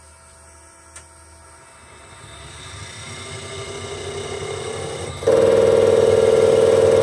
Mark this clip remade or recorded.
recorded